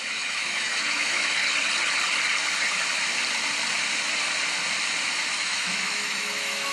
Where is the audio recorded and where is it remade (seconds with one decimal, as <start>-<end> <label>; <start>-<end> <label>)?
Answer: 0.0-1.4 remade; 1.4-5.4 recorded; 5.4-6.7 remade